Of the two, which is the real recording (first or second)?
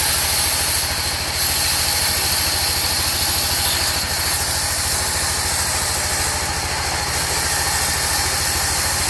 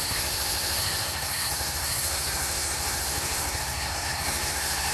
first